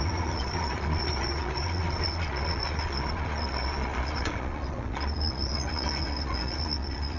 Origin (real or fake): fake